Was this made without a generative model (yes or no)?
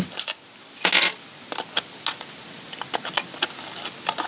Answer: yes